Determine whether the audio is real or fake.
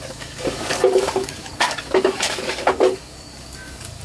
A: fake